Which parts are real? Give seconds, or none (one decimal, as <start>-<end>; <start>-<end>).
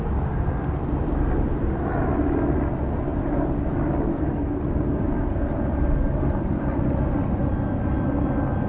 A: 0.0-4.1; 4.6-8.7